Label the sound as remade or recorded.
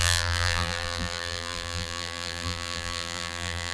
remade